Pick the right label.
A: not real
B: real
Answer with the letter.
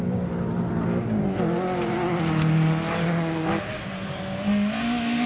B